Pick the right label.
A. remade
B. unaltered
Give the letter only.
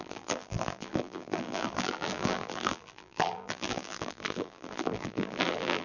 A